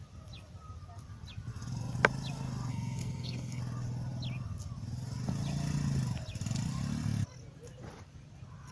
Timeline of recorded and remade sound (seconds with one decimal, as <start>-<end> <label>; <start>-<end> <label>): 0.0-2.7 recorded; 2.7-3.6 remade; 3.6-8.7 recorded